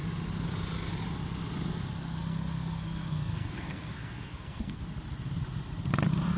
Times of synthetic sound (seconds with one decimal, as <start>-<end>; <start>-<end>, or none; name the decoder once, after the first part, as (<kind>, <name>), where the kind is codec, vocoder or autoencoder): 2.2-4.8 (codec, SNAC)